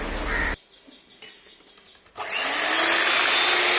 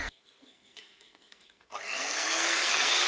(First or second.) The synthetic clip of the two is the second